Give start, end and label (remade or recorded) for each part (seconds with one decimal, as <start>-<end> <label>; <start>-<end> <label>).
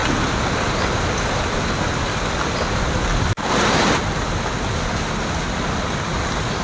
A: 0.0-6.6 recorded